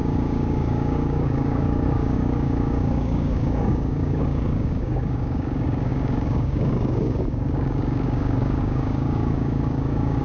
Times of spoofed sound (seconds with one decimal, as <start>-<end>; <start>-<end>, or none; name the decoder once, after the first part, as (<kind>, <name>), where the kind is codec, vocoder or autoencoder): 0.0-10.2 (codec, DAC)